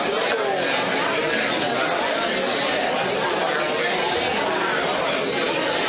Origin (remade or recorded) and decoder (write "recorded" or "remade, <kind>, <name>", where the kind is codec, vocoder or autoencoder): recorded